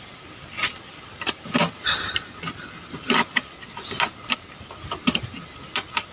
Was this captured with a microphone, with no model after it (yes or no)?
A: yes